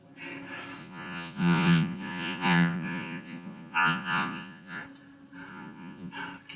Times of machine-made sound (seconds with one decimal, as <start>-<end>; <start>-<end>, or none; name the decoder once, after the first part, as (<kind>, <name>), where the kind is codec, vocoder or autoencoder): 0.8-4.8 (vocoder, Vocos); 5.5-6.1